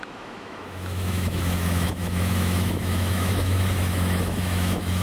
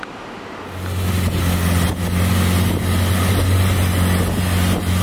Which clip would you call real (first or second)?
second